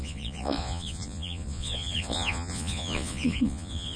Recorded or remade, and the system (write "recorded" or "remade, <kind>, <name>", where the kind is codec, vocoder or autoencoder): remade, vocoder, Vocos